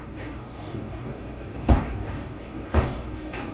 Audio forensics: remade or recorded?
remade